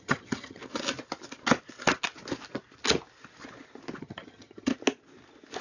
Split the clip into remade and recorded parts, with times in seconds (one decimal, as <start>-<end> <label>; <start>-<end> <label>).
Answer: 0.0-0.6 remade; 0.6-4.0 recorded; 4.0-4.7 remade; 4.7-5.6 recorded